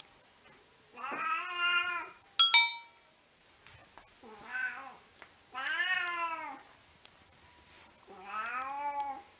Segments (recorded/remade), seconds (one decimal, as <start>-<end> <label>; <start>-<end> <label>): 0.0-9.4 recorded